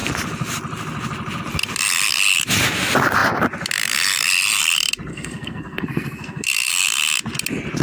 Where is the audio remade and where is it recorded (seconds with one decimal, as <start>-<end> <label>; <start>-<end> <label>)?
0.0-5.1 recorded; 5.1-6.7 remade; 6.7-7.8 recorded